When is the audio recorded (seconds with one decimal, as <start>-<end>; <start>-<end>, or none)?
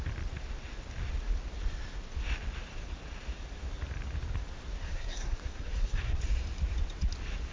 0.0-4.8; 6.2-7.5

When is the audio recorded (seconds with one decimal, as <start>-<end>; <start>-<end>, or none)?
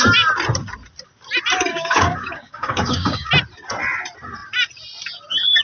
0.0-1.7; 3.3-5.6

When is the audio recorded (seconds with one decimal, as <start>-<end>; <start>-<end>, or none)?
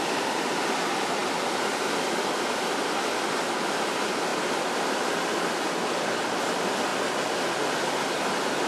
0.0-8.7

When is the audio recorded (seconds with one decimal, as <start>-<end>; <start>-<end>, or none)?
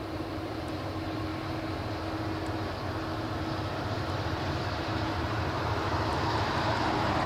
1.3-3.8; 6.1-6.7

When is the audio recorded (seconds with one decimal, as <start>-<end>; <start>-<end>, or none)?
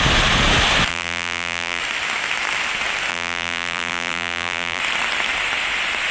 0.0-0.9; 1.8-3.1; 4.8-6.1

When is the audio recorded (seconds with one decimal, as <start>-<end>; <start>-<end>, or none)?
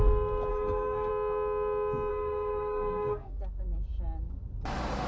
0.0-0.5; 1.1-2.1; 3.4-5.1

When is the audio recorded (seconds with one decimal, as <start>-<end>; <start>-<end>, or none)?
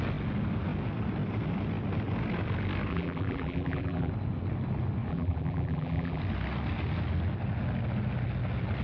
0.0-2.9; 4.1-5.1; 6.2-8.8